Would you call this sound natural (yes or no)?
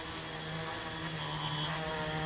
yes